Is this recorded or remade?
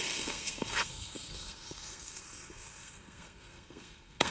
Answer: remade